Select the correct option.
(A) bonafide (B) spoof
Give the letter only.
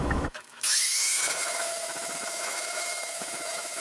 B